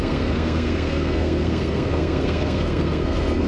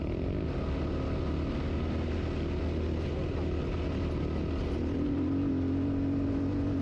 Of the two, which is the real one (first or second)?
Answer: second